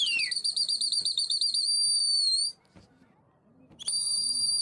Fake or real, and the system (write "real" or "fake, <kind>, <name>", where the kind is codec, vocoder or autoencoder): fake, vocoder, BigVGAN v2